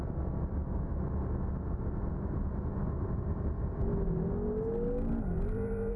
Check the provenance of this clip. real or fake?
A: real